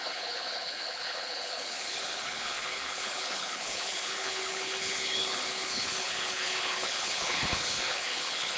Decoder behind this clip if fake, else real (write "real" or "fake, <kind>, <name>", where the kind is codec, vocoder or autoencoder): fake, codec, HILCodec